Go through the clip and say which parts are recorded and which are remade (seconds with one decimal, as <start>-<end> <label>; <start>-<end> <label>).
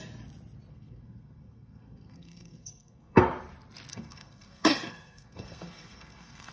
0.0-0.7 recorded; 0.7-3.2 remade; 3.2-3.9 recorded; 3.9-6.5 remade